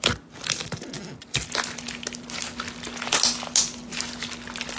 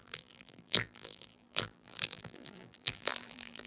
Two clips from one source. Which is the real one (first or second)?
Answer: first